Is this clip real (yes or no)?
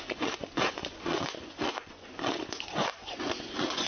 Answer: no